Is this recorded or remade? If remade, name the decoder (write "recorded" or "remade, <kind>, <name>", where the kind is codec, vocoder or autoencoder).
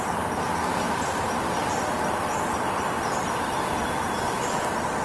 recorded